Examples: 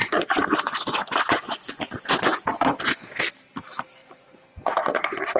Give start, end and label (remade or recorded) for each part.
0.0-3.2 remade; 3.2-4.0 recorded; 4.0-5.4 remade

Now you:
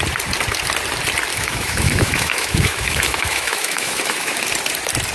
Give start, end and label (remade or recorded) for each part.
0.0-1.3 recorded; 1.3-4.4 remade; 4.4-5.1 recorded

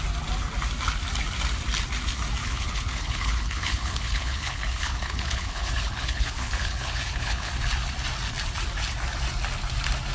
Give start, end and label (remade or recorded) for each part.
0.0-2.4 recorded; 2.4-7.5 remade; 7.5-10.1 recorded

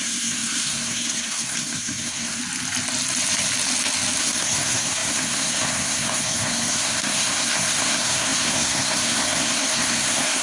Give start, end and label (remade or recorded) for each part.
0.0-2.4 remade; 2.4-4.2 recorded; 4.2-10.4 remade

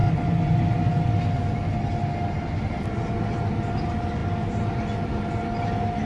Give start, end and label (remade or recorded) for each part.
0.0-6.1 recorded

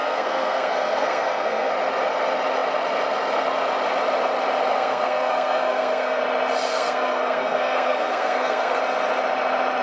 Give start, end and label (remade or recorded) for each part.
0.0-1.7 remade; 1.7-4.7 recorded; 4.7-6.2 remade; 6.2-6.7 recorded; 6.7-8.8 remade; 8.8-9.8 recorded

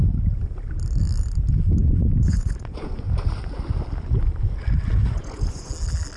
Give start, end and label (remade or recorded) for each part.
0.0-1.8 recorded; 1.8-3.1 remade; 3.1-5.0 recorded; 5.0-5.7 remade; 5.7-6.2 recorded